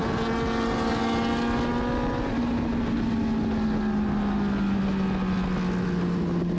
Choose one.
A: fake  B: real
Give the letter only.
B